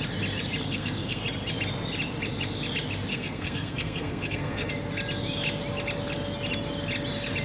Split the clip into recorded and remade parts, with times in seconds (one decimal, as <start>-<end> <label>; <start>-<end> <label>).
0.0-0.6 recorded; 0.6-1.2 remade; 1.2-3.1 recorded; 3.1-4.7 remade; 4.7-7.4 recorded